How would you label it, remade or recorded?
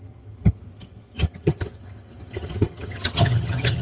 remade